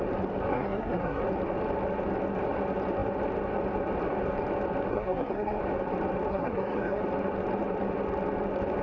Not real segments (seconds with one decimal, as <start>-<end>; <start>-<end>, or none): 0.5-1.2; 4.9-5.6; 6.3-7.0